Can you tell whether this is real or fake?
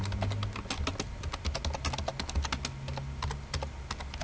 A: real